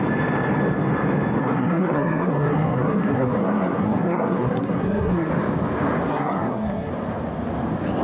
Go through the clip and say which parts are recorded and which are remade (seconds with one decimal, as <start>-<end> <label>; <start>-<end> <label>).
0.0-1.4 recorded; 1.4-5.3 remade; 5.3-6.1 recorded; 6.1-6.9 remade; 6.9-8.0 recorded